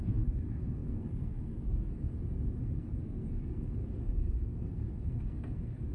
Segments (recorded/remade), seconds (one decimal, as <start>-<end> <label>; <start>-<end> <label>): 0.0-2.1 remade; 2.1-2.6 recorded; 2.6-5.9 remade